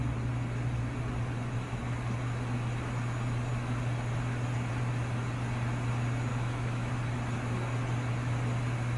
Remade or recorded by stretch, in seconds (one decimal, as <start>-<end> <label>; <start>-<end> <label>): 0.0-6.3 recorded; 6.3-6.9 remade; 6.9-9.0 recorded